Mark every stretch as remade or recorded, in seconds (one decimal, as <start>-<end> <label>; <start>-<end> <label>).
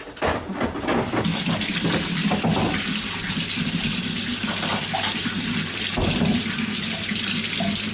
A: 0.0-7.9 recorded